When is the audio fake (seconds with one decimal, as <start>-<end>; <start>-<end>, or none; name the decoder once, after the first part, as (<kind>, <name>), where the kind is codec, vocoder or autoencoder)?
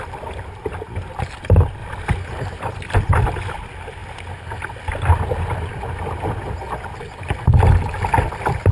none